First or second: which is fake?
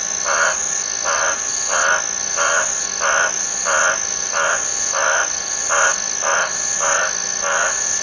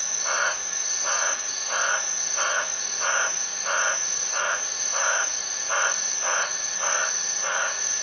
second